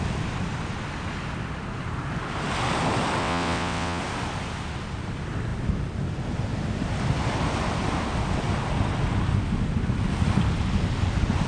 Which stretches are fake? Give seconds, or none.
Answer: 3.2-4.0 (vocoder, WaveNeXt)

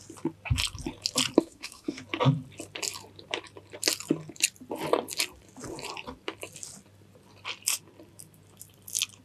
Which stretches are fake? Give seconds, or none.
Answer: 1.4-2.0 (autoencoder, DAC-VAE)

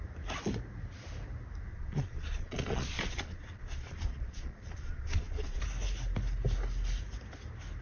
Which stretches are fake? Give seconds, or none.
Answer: 1.7-5.6 (vocoder, Vocos)

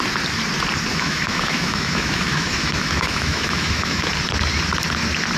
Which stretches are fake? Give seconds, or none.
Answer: 0.9-4.1 (autoencoder, DAC-VAE)